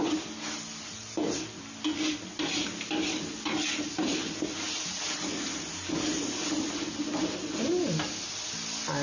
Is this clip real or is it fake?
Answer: real